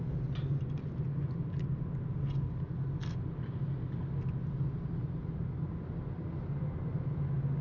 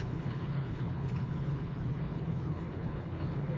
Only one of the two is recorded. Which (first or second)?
first